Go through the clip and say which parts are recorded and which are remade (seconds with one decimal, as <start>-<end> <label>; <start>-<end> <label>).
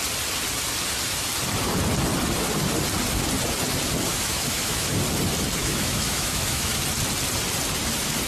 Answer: 0.0-4.1 recorded; 4.1-4.9 remade; 4.9-5.6 recorded; 5.6-6.7 remade; 6.7-8.3 recorded